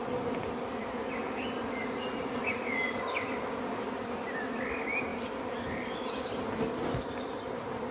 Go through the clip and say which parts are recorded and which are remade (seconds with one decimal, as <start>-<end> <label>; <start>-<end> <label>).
0.0-1.8 recorded; 1.8-2.7 remade; 2.7-7.9 recorded